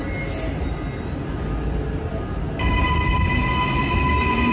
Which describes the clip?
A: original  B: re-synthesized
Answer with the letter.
A